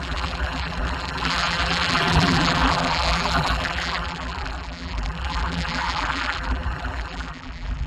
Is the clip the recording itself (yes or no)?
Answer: no